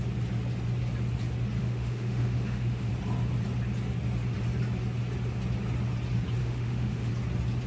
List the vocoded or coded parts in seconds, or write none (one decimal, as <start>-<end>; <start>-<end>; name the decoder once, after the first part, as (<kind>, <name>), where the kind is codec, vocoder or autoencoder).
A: 1.6-2.9 (autoencoder, DAC-VAE); 6.4-7.1